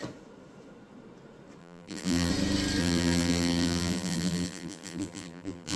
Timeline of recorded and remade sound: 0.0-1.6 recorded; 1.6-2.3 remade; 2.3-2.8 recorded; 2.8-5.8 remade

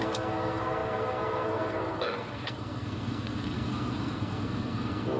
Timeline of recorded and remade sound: 0.0-5.2 remade

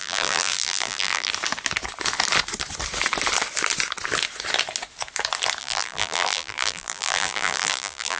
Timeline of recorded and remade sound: 0.0-1.3 remade; 1.3-5.6 recorded; 5.6-8.2 remade

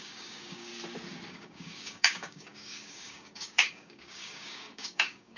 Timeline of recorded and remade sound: 0.0-0.7 remade; 0.7-1.3 recorded; 1.3-5.4 remade

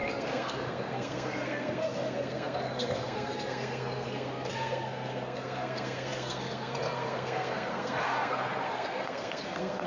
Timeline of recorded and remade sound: 0.0-9.9 remade

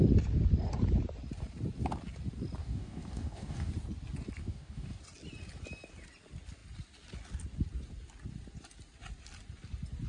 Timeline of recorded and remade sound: 0.0-2.6 recorded; 2.6-3.7 remade; 3.7-4.4 recorded; 4.4-5.0 remade; 5.0-10.1 recorded

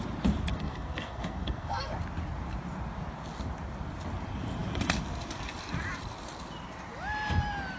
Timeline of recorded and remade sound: 0.0-0.5 recorded; 0.5-1.9 remade; 1.9-7.8 recorded